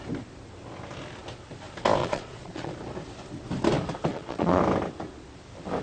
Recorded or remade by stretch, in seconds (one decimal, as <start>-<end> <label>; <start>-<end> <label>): 0.0-2.0 recorded; 2.0-2.7 remade; 2.7-4.1 recorded; 4.1-4.6 remade; 4.6-5.8 recorded